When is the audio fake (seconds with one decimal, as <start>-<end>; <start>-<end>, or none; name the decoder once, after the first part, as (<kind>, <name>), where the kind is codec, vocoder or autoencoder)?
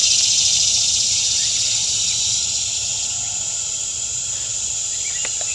4.5-5.1 (vocoder, BigVGAN v2)